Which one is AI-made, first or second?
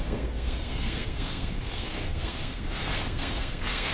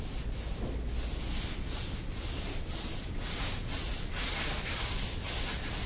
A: first